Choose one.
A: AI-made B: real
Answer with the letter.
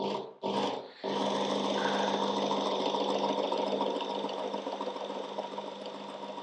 B